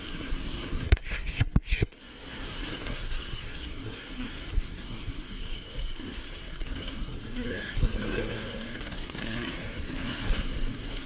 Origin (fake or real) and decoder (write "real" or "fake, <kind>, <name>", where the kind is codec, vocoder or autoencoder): fake, codec, SNAC